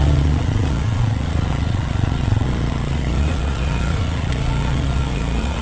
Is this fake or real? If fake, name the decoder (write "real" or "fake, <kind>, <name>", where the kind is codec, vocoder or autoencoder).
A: fake, vocoder, Vocos